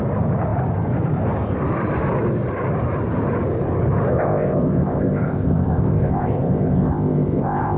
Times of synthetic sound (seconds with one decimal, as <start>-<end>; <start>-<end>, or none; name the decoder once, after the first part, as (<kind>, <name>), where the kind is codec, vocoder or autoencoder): 4.1-7.8 (codec, ZipCodec)